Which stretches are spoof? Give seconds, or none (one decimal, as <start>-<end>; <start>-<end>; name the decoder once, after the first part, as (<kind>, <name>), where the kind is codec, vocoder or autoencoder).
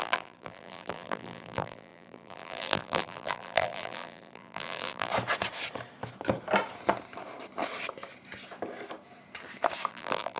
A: 0.0-5.1 (vocoder, BigVGAN v2); 9.9-10.4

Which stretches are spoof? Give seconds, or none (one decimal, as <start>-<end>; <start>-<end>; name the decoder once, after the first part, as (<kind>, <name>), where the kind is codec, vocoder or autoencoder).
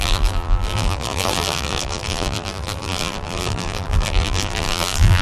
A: 0.0-5.2 (vocoder, BigVGAN v2)